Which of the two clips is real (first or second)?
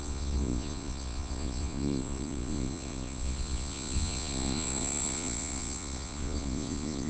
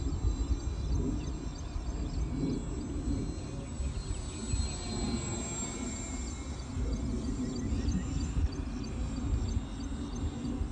second